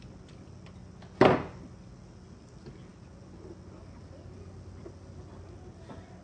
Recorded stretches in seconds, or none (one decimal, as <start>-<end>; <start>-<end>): 0.0-6.2